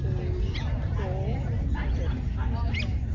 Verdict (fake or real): real